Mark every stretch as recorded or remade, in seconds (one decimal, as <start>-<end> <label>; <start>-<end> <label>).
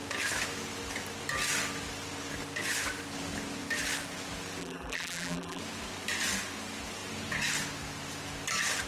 0.0-4.6 recorded; 4.6-5.6 remade; 5.6-8.9 recorded